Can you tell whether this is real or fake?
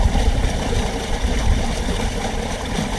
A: fake